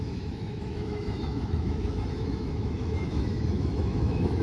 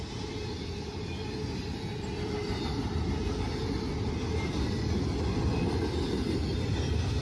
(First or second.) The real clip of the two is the second